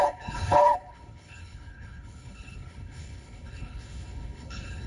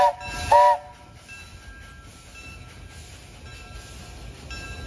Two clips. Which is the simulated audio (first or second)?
first